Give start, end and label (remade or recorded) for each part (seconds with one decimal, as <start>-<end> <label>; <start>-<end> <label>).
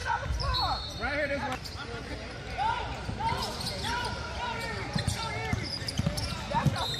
0.0-7.0 recorded